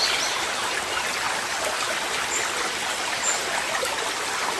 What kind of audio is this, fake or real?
real